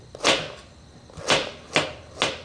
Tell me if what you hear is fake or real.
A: real